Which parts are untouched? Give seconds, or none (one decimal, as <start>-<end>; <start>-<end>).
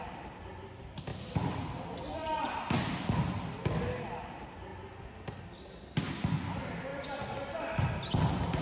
0.0-1.1; 2.5-6.9; 7.9-8.6